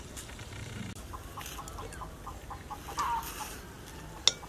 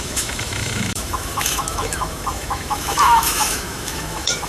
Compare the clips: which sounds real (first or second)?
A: first